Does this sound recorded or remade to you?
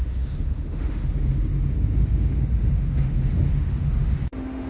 remade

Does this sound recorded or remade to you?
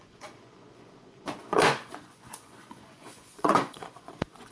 remade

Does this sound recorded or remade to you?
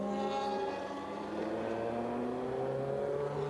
recorded